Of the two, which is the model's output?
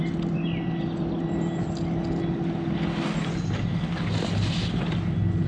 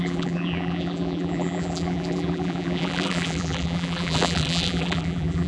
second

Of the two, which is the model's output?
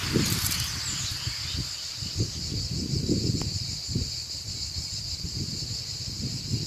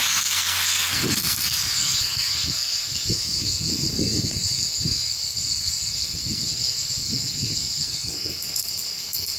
second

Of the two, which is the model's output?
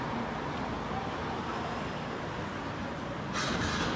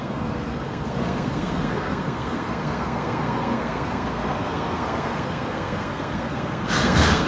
second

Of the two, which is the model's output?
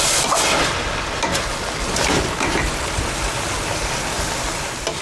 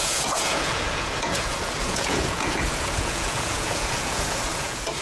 second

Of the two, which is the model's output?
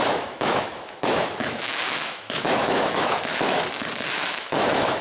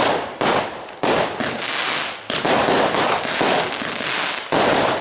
first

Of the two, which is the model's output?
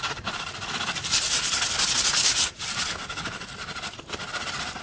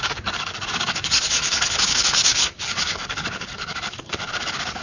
second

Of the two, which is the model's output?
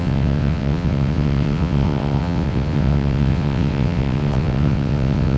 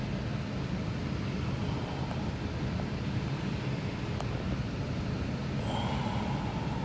first